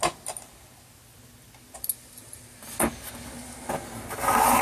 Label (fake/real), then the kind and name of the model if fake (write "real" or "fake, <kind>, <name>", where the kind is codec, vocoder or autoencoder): real